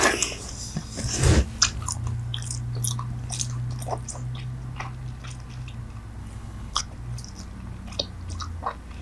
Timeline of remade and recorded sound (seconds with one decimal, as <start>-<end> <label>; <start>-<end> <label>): 0.0-6.2 recorded; 6.2-6.8 remade; 6.8-9.0 recorded